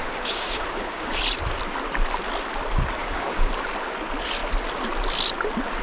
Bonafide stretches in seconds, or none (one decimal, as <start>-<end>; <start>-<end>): 1.2-3.0; 3.5-5.8